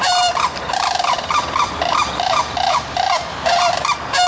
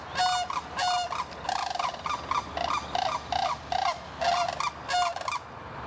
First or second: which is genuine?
second